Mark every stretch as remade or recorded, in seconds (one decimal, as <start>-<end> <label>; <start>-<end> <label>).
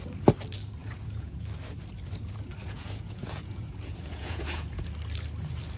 0.0-0.8 recorded; 0.8-1.4 remade; 1.4-2.6 recorded; 2.6-4.8 remade; 4.8-5.8 recorded